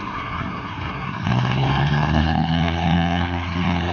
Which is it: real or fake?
fake